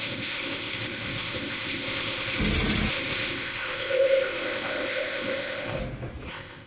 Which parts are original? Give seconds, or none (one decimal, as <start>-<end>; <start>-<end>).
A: 2.4-2.9; 5.8-6.3